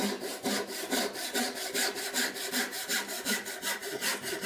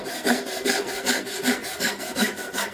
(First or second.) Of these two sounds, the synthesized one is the second